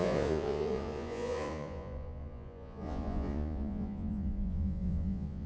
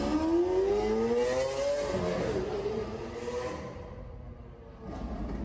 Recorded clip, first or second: second